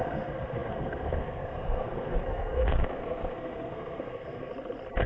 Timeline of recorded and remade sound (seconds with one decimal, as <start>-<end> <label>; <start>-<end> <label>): 0.0-4.5 remade; 4.5-5.1 recorded